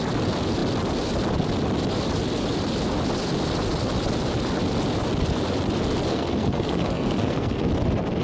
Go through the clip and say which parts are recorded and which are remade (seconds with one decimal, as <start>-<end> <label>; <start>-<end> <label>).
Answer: 0.0-6.1 recorded; 6.1-7.7 remade; 7.7-8.2 recorded